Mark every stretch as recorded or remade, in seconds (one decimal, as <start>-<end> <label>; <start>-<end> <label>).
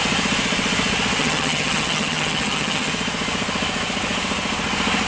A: 0.0-1.2 recorded; 1.2-2.9 remade; 2.9-5.1 recorded